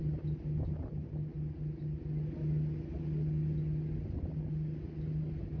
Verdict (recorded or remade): recorded